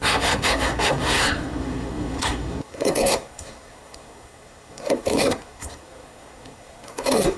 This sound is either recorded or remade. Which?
remade